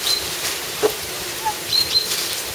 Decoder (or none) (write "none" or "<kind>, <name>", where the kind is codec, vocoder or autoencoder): vocoder, BigVGAN v2